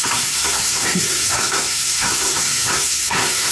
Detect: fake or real fake